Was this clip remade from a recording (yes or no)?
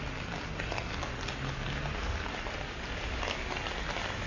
no